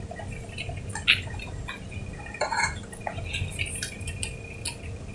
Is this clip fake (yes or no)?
no